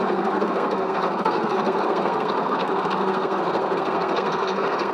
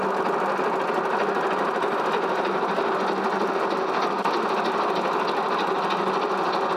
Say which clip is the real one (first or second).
second